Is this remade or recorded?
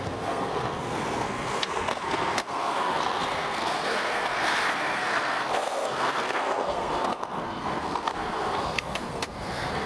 remade